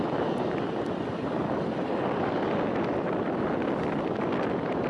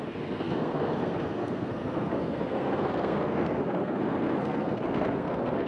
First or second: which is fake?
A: second